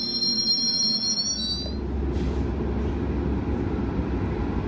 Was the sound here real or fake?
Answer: real